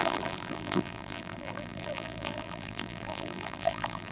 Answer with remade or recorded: remade